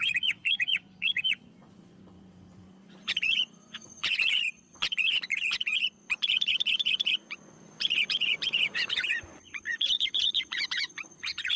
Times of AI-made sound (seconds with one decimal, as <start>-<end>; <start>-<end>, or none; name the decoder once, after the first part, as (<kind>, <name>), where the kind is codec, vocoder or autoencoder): 0.0-11.6 (vocoder, Vocos)